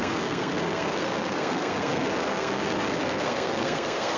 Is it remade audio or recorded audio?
remade